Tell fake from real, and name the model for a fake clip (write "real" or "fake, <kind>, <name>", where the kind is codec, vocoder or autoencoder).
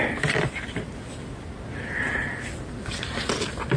real